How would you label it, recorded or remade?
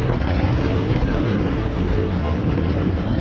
remade